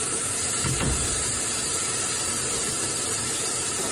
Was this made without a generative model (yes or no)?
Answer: no